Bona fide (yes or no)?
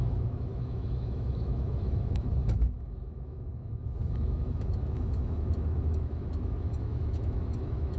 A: no